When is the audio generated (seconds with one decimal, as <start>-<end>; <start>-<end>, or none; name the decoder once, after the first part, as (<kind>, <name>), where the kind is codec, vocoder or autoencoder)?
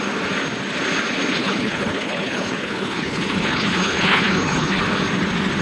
1.4-4.8 (codec, HILCodec)